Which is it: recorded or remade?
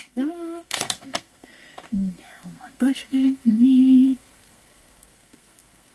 remade